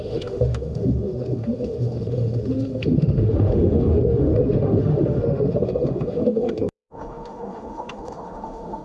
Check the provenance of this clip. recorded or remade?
remade